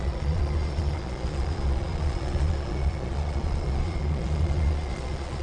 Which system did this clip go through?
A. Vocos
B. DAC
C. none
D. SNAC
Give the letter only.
A